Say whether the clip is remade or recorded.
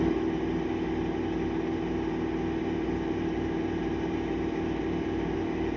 recorded